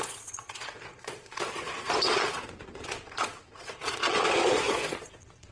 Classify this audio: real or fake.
fake